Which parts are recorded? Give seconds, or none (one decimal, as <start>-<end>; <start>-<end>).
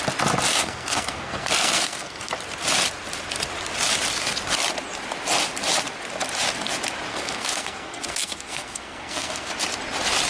0.0-0.5; 2.3-7.1; 9.5-10.3